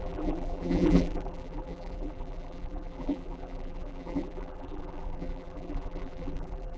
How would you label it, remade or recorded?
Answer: remade